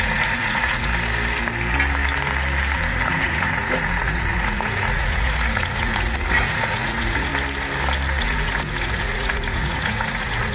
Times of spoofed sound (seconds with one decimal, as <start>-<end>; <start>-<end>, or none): 0.0-0.9; 2.9-7.3; 8.2-10.5